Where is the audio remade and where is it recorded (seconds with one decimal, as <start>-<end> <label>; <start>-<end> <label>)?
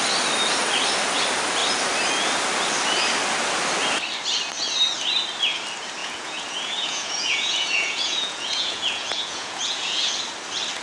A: 0.0-6.0 recorded; 6.0-10.0 remade; 10.0-10.8 recorded